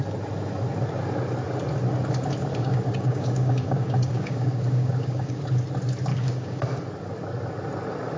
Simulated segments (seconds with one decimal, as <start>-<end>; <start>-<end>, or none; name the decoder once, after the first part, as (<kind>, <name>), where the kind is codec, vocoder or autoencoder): 2.5-5.4 (codec, DAC); 6.1-6.6